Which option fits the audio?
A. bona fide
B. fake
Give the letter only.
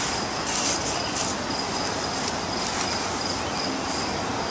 A